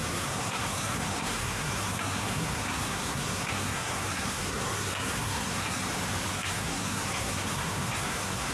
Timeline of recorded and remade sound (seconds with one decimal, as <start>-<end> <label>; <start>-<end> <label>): 0.0-5.8 remade; 5.8-6.3 recorded; 6.3-8.5 remade